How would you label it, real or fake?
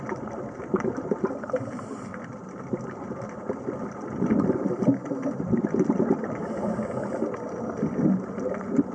real